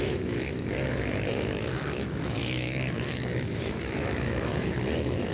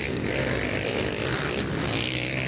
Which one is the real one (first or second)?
second